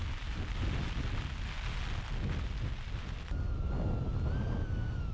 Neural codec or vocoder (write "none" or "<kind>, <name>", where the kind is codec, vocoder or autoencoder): none